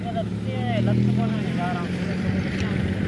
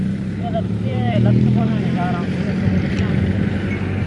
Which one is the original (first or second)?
first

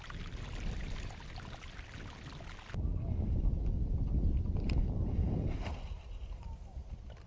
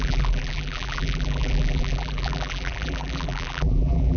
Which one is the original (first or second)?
first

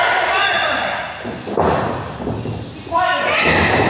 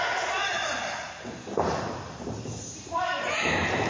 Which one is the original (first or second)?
first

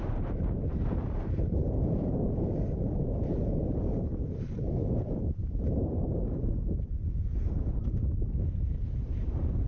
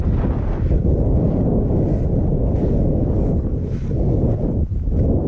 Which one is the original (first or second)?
second